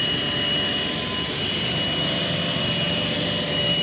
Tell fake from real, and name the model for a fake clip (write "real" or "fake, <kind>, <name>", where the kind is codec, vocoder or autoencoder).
fake, vocoder, BigVGAN v2